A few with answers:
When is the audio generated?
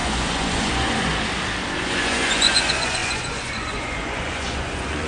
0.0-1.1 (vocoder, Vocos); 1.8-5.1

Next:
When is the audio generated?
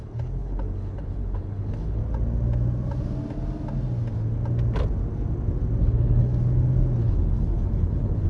0.0-2.0 (codec, HILCodec); 5.8-6.3; 7.0-8.3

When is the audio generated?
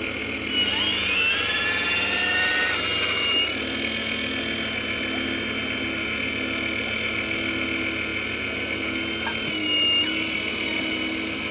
none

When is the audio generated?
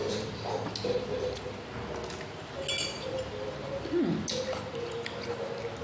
none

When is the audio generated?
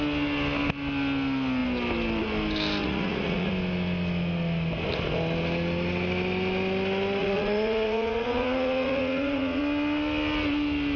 2.8-3.5 (vocoder, Vocos); 7.2-9.6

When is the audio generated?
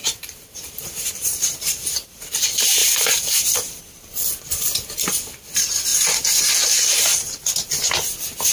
0.0-2.3 (vocoder, BigVGAN v2); 2.8-3.8